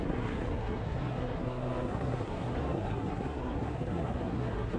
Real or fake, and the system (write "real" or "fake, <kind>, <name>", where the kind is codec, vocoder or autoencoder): fake, codec, SNAC